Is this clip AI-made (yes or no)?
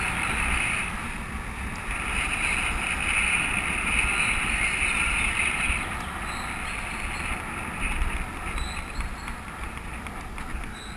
no